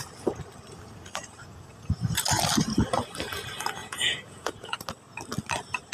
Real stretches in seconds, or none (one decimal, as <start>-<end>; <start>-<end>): 0.0-3.8; 4.8-5.9